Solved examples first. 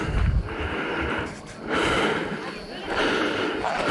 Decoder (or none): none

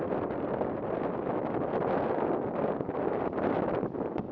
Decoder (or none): none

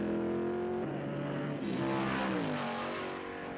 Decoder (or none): none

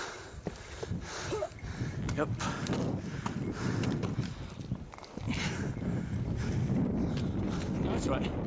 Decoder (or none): none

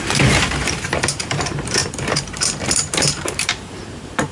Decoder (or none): vocoder, BigVGAN v2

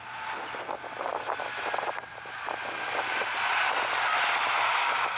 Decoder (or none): none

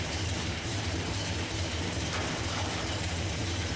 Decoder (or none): vocoder, BigVGAN v2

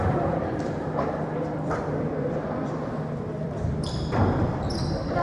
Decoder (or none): vocoder, BigVGAN v2